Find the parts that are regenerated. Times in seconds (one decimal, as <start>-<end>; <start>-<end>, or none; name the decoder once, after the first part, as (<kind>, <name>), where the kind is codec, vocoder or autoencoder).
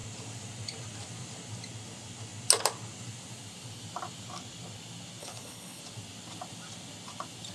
5.2-5.8 (codec, HILCodec)